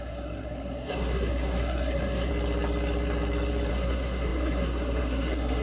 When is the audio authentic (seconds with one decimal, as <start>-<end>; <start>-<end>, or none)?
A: 2.3-3.7